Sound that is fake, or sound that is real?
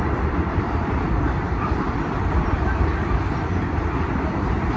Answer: fake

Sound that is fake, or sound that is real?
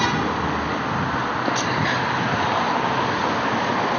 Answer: real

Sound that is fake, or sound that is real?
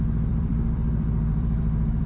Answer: fake